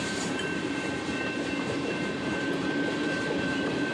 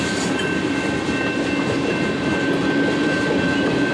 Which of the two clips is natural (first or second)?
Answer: second